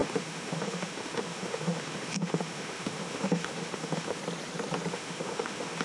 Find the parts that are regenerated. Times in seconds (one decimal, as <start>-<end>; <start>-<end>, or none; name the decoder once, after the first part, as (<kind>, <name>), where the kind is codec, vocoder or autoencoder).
0.0-4.2 (autoencoder, DAC-VAE); 4.9-5.8